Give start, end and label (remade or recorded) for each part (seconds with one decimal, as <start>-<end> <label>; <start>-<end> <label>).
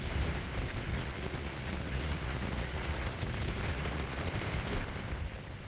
0.0-0.9 recorded; 0.9-3.3 remade; 3.3-3.7 recorded; 3.7-4.3 remade; 4.3-5.7 recorded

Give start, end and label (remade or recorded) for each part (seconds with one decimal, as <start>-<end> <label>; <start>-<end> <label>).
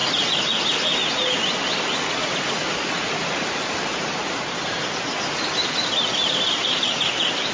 0.0-7.5 recorded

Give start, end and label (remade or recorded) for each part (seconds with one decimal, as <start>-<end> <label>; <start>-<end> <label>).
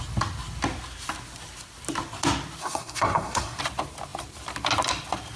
0.0-2.6 recorded; 2.6-3.6 remade; 3.6-5.4 recorded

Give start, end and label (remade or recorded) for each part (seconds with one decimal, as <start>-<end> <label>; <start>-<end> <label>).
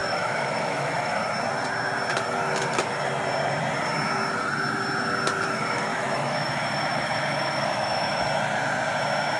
0.0-1.2 remade; 1.2-5.9 recorded; 5.9-8.2 remade; 8.2-9.4 recorded